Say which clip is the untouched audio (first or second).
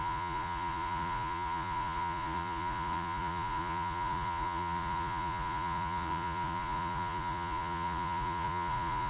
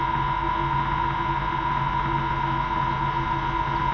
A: second